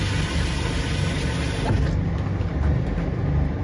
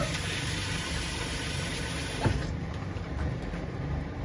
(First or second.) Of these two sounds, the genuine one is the first